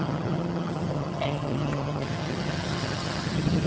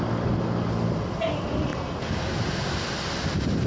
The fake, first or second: first